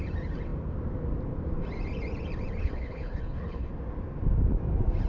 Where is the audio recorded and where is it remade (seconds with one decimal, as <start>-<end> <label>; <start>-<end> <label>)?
0.0-2.6 recorded; 2.6-3.7 remade; 3.7-5.1 recorded